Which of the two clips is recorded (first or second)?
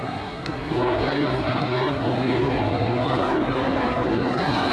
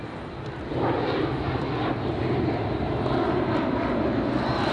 second